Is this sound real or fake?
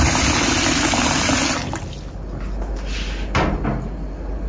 real